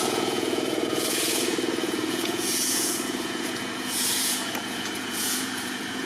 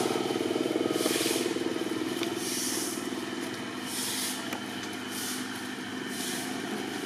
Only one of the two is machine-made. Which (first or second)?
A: first